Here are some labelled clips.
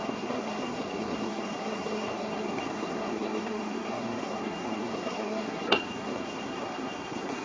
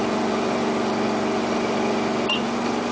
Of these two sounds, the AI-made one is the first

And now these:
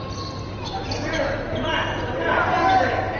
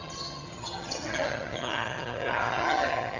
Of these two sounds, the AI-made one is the second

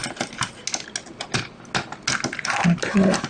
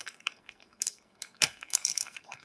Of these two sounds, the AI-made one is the second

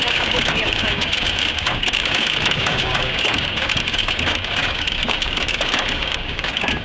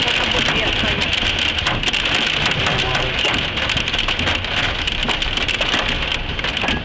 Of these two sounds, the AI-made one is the first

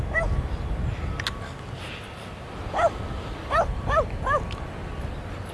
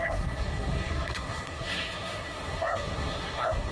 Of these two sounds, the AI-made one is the second